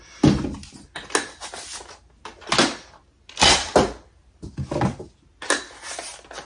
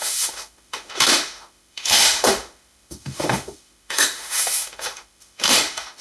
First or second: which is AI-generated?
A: second